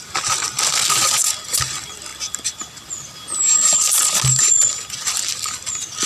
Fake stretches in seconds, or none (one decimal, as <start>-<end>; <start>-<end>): none